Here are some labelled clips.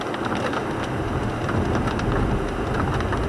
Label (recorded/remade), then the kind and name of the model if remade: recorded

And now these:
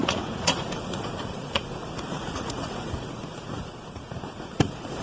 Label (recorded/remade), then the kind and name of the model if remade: remade, vocoder, Vocos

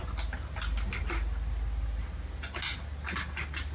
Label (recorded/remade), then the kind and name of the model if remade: recorded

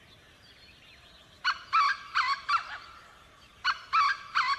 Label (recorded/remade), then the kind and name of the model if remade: recorded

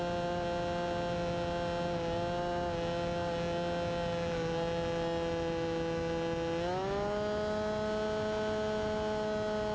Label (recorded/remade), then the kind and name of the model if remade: recorded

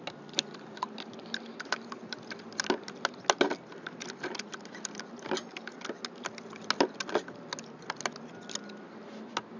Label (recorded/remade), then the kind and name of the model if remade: recorded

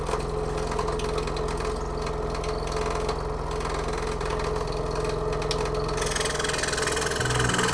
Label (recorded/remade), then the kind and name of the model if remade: recorded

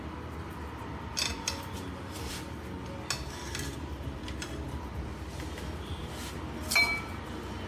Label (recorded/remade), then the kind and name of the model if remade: recorded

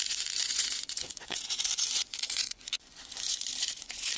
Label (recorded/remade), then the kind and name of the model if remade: remade, vocoder, Vocos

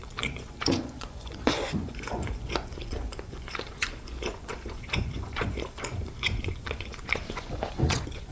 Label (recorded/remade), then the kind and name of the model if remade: remade, vocoder, Vocos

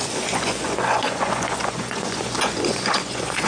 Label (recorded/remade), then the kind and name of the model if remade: remade, vocoder, Vocos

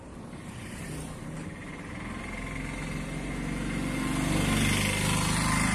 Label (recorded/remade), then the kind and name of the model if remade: recorded